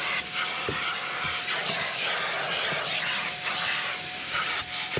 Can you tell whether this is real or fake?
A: fake